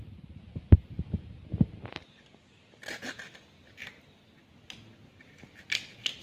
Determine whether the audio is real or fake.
real